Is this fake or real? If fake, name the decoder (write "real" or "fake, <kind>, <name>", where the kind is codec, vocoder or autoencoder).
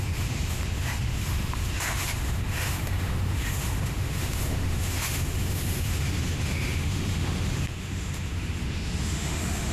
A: fake, autoencoder, DAC-VAE